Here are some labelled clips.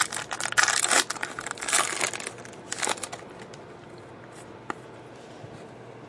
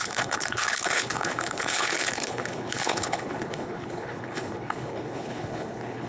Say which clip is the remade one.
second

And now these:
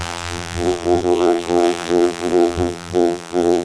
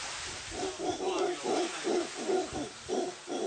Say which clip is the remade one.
first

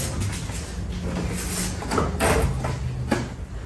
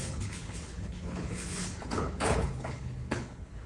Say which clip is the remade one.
second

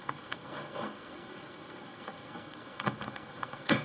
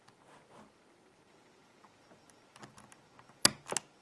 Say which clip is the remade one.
first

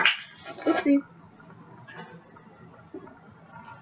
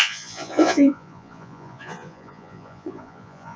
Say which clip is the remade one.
second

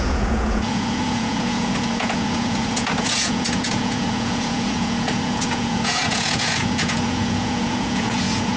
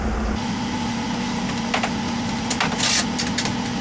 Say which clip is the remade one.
first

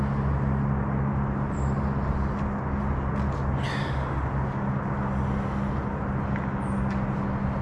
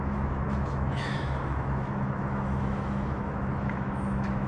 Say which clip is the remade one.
second